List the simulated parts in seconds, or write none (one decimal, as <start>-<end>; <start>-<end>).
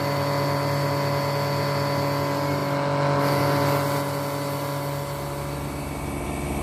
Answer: none